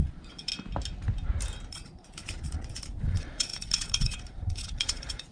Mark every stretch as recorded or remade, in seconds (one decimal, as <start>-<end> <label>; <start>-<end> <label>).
0.0-0.5 remade; 0.5-1.7 recorded; 1.7-5.3 remade